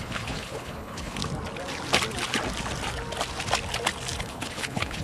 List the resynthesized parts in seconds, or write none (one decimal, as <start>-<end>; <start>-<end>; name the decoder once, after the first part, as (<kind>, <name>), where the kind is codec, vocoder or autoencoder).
0.0-1.2 (codec, HILCodec); 4.2-5.0